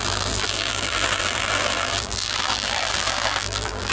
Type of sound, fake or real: fake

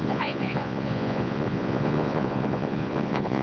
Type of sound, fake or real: fake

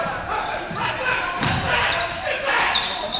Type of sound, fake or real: fake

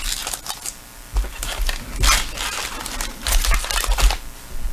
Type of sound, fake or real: real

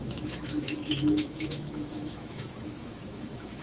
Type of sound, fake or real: fake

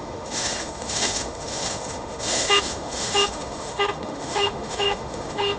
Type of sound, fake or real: fake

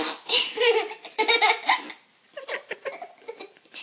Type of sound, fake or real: real